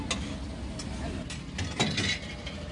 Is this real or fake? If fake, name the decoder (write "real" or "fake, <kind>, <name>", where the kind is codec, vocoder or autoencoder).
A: real